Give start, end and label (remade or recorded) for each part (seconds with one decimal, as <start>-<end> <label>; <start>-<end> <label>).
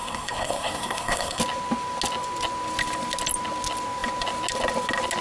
0.0-1.4 remade; 1.4-5.2 recorded